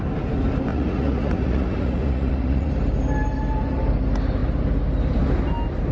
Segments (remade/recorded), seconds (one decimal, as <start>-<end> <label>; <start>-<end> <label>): 0.0-0.7 recorded; 0.7-2.7 remade; 2.7-5.9 recorded